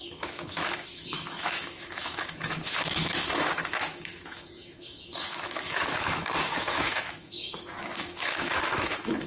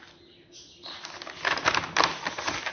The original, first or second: second